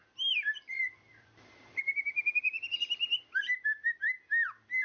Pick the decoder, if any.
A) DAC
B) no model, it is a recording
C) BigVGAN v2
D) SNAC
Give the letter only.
C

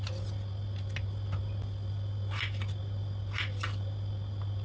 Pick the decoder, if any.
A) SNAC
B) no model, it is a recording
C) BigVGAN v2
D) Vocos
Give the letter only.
B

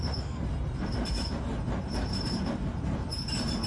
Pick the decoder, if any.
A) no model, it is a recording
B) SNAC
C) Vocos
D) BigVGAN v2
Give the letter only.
D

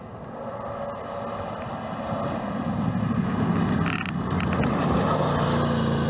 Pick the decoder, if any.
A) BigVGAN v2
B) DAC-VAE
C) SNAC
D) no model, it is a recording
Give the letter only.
D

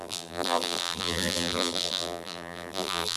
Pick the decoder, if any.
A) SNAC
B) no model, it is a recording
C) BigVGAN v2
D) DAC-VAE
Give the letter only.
C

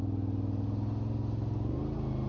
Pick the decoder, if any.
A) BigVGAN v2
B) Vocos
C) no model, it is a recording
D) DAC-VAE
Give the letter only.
C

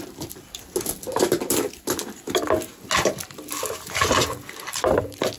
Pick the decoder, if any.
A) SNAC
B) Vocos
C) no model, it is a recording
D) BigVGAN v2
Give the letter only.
C